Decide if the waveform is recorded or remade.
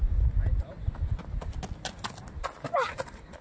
recorded